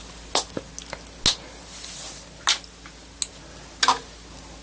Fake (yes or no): no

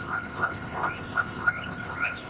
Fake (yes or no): yes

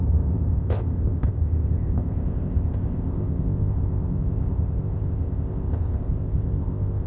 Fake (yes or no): yes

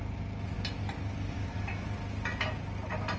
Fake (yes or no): no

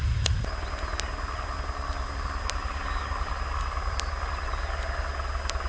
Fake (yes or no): no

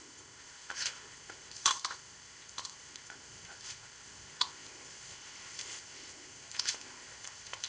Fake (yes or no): yes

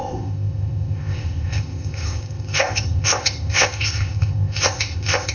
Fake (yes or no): yes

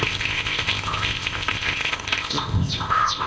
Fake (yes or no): yes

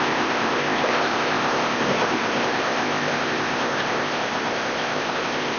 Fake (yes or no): yes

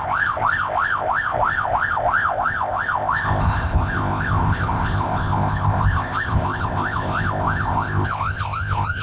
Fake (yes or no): yes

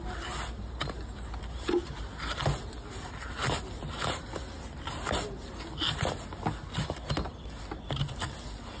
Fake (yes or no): no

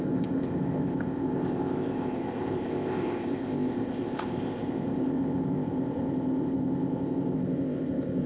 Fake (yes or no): yes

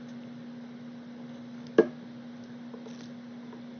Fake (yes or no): no